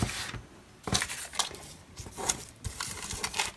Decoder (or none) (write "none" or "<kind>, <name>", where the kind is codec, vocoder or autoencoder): none